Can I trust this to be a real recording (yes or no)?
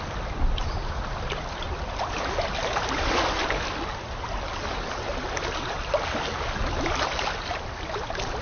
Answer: yes